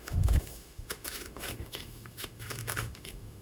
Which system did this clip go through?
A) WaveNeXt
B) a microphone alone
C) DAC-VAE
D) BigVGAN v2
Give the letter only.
C